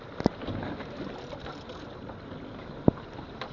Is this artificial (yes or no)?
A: no